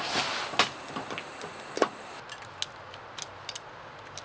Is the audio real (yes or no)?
yes